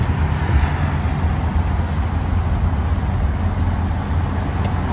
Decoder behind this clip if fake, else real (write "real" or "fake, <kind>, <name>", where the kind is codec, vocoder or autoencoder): real